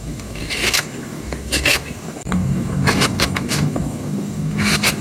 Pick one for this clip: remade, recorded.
remade